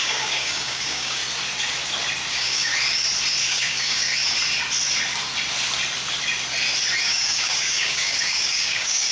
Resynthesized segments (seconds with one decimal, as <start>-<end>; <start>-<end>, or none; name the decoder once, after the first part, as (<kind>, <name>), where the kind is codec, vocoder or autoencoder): 0.0-1.2 (codec, DAC); 2.3-2.7; 3.5-4.1; 7.0-9.1